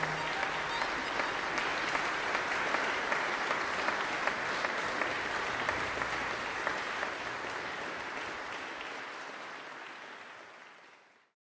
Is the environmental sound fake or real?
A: real